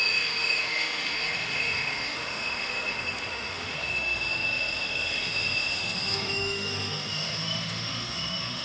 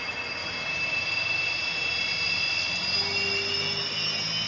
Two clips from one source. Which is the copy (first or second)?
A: first